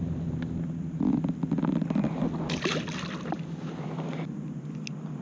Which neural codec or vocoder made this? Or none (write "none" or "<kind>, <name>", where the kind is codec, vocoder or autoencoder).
none